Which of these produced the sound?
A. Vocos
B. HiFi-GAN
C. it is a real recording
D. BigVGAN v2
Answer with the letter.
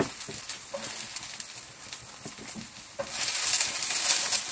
C